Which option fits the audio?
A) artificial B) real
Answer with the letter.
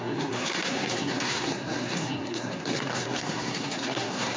A